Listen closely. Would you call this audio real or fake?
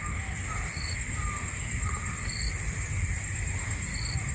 real